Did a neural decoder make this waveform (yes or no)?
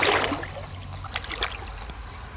no